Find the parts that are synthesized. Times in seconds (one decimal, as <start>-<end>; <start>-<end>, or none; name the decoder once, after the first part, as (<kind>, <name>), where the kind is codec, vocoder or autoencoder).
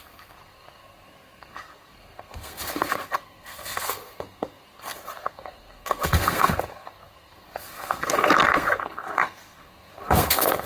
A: 0.0-10.7 (codec, SNAC)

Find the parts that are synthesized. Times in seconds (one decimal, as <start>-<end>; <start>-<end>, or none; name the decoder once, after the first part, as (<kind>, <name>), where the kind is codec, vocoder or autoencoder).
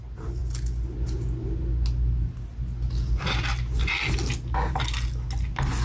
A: none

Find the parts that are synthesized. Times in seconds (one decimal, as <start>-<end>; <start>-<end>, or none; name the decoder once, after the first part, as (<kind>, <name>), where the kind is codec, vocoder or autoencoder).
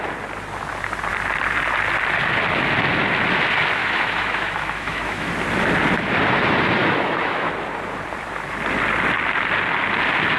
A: 3.8-5.3 (autoencoder, DAC-VAE); 6.8-7.5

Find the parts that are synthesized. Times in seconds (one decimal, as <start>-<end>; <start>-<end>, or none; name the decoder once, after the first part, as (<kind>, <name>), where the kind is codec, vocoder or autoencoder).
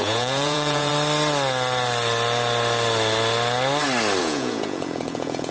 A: 0.0-0.9 (vocoder, Vocos); 4.2-5.5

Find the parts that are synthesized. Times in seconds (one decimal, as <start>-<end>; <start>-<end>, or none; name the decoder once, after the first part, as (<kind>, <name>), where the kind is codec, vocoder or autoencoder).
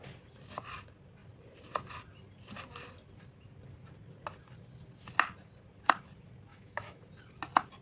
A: 6.5-7.0 (autoencoder, DAC-VAE)